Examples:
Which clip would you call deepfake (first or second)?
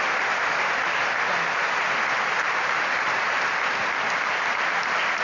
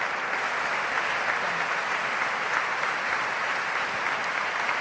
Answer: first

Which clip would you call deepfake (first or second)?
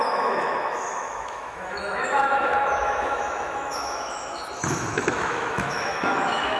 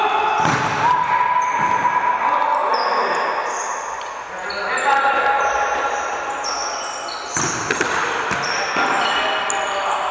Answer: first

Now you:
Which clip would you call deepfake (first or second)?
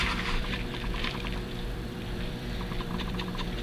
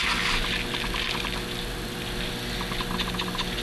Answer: first